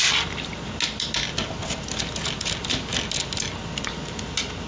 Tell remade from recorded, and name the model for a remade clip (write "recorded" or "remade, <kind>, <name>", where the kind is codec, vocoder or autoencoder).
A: recorded